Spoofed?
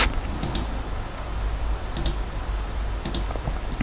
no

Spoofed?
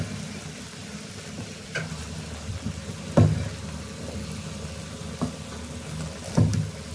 no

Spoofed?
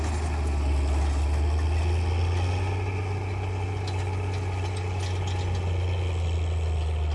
no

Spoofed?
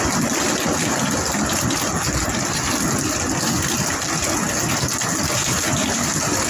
no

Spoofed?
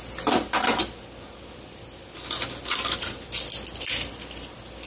no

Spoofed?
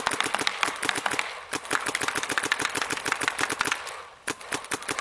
no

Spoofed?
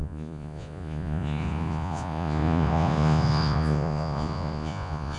yes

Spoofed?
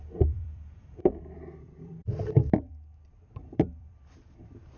yes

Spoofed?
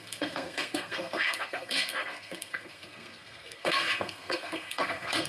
yes